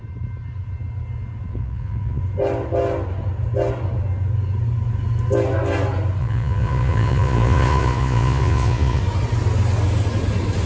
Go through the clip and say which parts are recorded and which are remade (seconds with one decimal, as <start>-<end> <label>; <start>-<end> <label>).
0.0-1.5 recorded; 1.5-2.2 remade; 2.2-6.2 recorded; 6.2-9.0 remade; 9.0-10.7 recorded

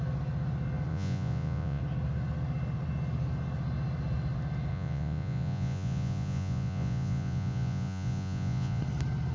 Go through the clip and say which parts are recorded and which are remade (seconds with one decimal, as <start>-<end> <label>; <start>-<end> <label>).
0.0-0.9 recorded; 0.9-1.8 remade; 1.8-4.7 recorded; 4.7-8.8 remade; 8.8-9.3 recorded

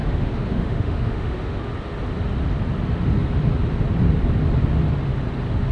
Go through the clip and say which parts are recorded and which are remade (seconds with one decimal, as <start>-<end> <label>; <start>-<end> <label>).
0.0-1.6 remade; 1.6-5.7 recorded

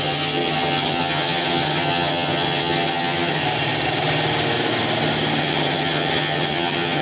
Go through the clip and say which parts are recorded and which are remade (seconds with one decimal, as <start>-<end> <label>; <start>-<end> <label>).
0.0-3.4 remade; 3.4-5.4 recorded; 5.4-7.0 remade

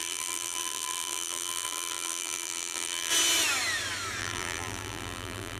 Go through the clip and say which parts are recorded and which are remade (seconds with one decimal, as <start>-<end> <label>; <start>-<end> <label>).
0.0-3.1 remade; 3.1-4.2 recorded; 4.2-5.6 remade

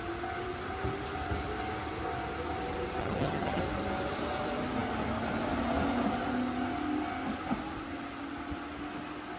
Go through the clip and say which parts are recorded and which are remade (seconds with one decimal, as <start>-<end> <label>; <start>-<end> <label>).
0.0-3.0 recorded; 3.0-3.6 remade; 3.6-9.4 recorded

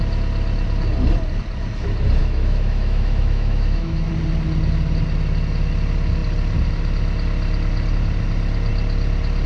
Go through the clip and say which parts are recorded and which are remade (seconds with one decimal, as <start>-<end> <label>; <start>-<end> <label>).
0.0-2.2 recorded; 2.2-4.1 remade; 4.1-9.5 recorded